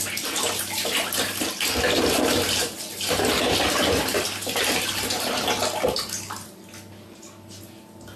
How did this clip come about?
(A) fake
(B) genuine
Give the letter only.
B